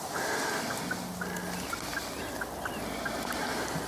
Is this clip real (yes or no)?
yes